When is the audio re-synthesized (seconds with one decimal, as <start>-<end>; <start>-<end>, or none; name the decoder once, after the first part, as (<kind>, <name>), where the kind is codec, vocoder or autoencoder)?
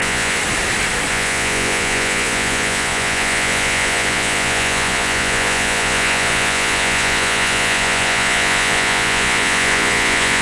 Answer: 0.0-0.4 (vocoder, Vocos); 1.1-10.4